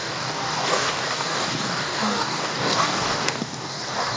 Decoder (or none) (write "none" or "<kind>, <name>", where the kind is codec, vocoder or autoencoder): codec, DAC